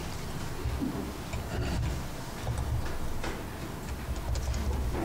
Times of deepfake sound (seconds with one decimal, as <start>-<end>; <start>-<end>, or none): none